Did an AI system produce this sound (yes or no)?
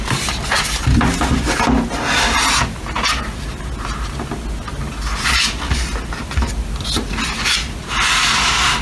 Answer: no